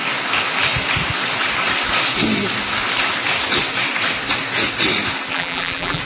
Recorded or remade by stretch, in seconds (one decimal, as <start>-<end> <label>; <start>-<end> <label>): 0.0-5.3 recorded; 5.3-6.0 remade